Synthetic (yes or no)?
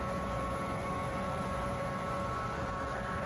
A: yes